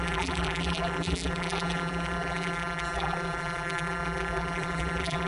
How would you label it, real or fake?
fake